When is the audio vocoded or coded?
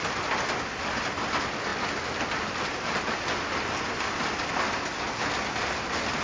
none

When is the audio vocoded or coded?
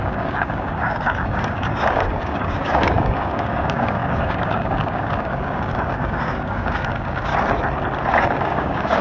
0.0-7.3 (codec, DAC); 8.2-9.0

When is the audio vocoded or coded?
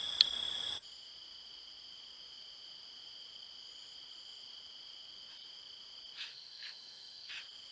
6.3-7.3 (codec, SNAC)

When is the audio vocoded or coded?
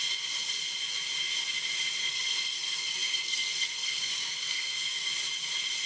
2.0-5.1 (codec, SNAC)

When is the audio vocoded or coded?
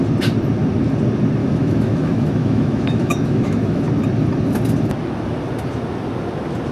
1.4-3.8 (autoencoder, DAC-VAE)